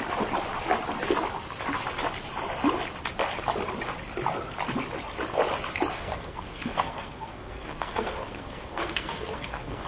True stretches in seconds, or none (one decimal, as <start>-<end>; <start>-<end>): 0.0-5.9